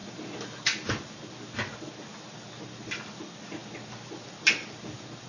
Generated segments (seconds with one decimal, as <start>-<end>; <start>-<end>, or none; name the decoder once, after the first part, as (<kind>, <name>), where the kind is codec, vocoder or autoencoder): none